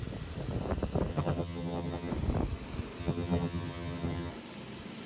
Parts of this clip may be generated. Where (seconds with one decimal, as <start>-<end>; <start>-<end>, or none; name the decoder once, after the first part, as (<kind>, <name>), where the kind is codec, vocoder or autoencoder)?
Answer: 1.1-2.1 (vocoder, HiFi-GAN); 3.0-4.3